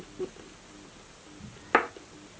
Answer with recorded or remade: recorded